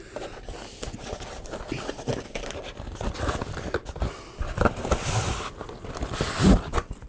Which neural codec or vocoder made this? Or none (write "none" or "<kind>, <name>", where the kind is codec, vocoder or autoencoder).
none